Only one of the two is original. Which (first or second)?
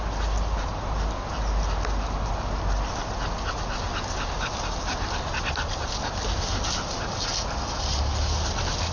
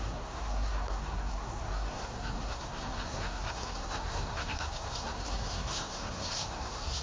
first